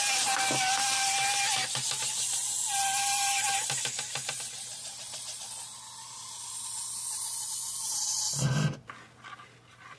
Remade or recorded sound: recorded